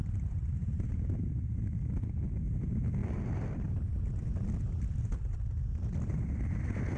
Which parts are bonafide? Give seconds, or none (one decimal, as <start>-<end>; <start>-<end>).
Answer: 0.0-0.6; 1.5-7.0